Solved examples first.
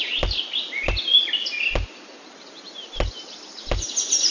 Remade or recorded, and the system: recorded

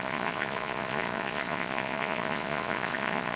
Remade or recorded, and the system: remade, vocoder, Vocos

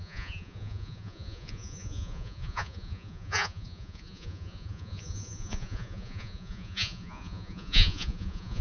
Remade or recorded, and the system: remade, vocoder, Vocos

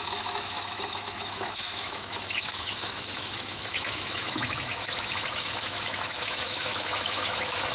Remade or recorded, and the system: remade, autoencoder, DAC-VAE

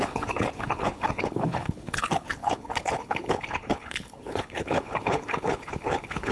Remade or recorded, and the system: remade, codec, HILCodec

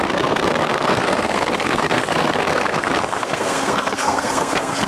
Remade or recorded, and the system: remade, codec, SNAC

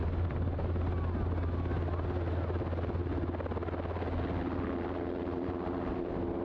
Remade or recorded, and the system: recorded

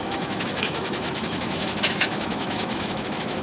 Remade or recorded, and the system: remade, autoencoder, DAC-VAE